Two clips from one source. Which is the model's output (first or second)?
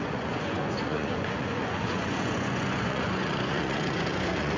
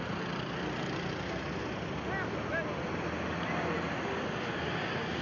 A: first